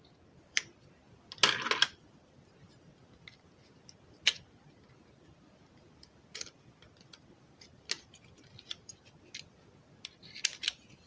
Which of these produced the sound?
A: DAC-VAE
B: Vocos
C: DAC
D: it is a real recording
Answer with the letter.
D